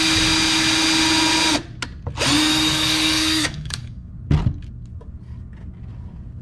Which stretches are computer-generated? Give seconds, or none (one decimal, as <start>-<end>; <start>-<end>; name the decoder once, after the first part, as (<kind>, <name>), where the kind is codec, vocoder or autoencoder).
2.5-4.1 (codec, DAC)